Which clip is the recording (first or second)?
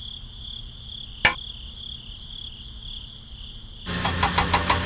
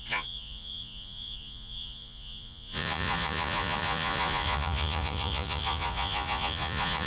first